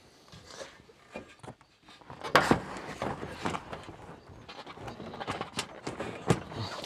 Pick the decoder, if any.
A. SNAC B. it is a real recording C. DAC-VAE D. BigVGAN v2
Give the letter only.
B